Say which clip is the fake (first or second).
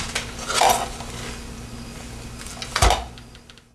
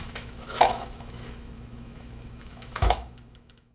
second